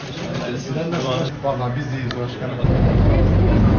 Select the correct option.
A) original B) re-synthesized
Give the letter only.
B